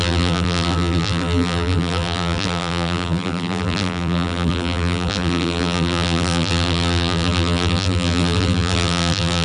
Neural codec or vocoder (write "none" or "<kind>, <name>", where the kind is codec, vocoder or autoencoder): vocoder, BigVGAN v2